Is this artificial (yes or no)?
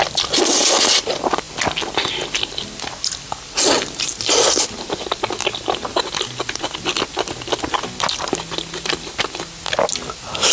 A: no